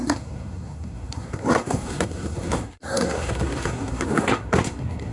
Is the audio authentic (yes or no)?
no